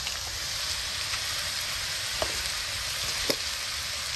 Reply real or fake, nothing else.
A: real